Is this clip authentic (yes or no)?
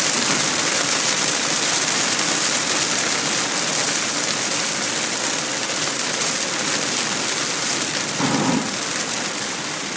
yes